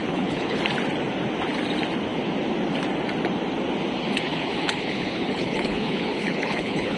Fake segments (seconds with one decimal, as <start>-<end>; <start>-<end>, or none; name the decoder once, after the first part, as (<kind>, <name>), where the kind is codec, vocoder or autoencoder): 0.0-0.6 (codec, HILCodec); 4.3-7.0